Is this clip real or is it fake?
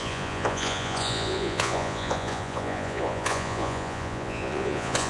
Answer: fake